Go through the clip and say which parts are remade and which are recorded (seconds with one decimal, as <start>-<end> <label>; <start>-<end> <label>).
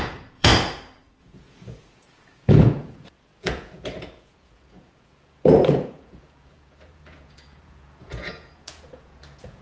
0.0-0.5 remade; 0.5-1.2 recorded; 1.2-9.6 remade